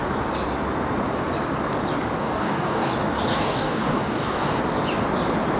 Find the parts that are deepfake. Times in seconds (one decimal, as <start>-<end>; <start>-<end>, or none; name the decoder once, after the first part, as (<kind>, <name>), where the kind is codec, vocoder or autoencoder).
2.2-2.9 (codec, DAC); 3.3-4.6